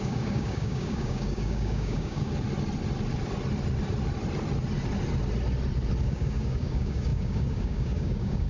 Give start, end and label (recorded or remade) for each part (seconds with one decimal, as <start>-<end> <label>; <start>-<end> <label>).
0.0-2.3 remade; 2.3-6.0 recorded; 6.0-8.5 remade